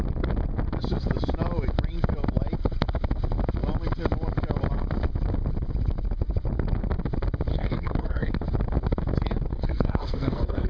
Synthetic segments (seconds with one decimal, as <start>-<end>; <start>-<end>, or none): 7.5-8.3; 9.5-10.7